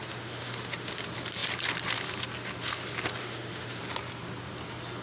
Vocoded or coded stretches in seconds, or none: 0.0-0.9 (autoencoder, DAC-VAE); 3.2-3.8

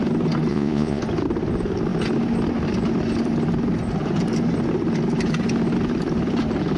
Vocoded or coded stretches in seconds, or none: 0.5-1.0 (vocoder, Vocos)

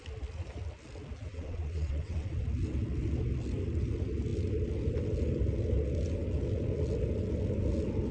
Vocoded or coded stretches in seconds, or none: 1.3-2.3 (vocoder, WaveNeXt)

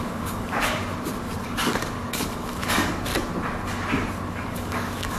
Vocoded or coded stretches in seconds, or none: 0.0-0.8 (codec, DAC); 1.4-3.1; 4.3-5.2

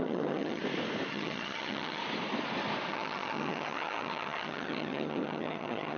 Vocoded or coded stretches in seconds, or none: 0.0-0.6 (vocoder, HiFi-GAN); 1.1-2.0; 2.9-6.0

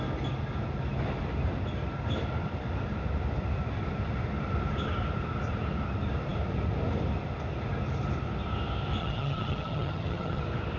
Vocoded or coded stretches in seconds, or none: 9.0-10.4 (vocoder, HiFi-GAN)

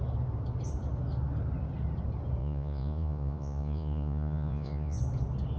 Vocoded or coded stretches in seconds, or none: 2.4-5.0 (vocoder, Vocos)

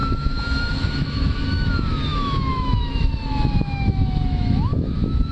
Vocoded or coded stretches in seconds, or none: 0.0-5.3 (autoencoder, DAC-VAE)